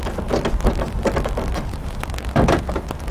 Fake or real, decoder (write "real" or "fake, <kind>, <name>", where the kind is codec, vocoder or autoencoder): real